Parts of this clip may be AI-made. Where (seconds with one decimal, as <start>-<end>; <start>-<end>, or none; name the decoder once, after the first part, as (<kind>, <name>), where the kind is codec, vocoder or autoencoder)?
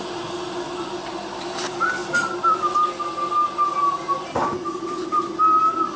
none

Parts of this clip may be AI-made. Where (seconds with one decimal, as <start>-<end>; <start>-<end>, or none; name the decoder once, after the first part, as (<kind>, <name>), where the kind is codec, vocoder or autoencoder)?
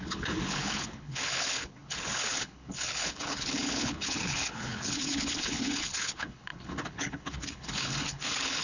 0.0-8.6 (codec, HILCodec)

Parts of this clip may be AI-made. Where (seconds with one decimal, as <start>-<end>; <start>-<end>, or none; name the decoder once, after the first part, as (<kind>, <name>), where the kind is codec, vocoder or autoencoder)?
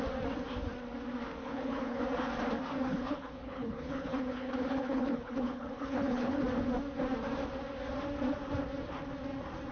1.4-2.0 (codec, HILCodec); 2.9-6.4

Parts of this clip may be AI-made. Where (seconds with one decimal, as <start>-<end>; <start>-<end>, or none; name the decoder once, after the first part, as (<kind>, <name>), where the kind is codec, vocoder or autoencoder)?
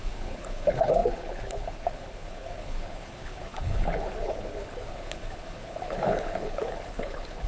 0.0-7.5 (codec, HILCodec)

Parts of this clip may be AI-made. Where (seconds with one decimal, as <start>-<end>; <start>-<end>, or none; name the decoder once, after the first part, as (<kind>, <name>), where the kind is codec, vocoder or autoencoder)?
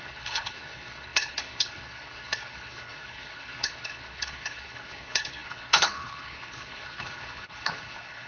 0.0-8.3 (codec, HILCodec)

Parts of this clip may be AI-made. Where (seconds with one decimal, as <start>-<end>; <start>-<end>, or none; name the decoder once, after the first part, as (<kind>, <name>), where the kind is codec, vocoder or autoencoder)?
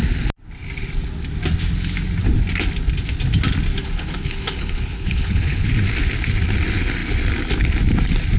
3.8-5.7 (codec, HILCodec)